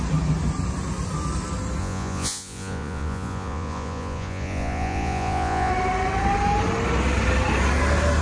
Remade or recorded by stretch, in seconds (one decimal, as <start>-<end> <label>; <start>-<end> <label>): 0.0-1.8 recorded; 1.8-5.7 remade; 5.7-8.2 recorded